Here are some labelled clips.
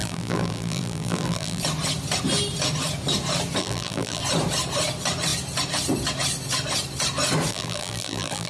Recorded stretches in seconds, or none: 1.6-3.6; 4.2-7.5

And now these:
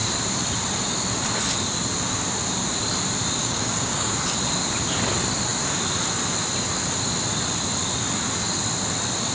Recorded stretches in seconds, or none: 0.0-3.4; 4.1-9.3